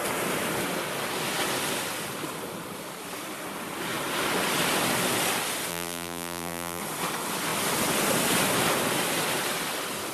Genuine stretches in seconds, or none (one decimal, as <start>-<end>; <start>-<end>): 0.0-5.7; 6.8-10.1